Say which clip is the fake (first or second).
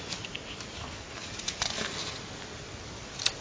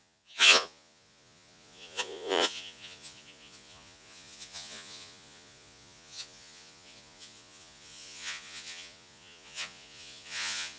second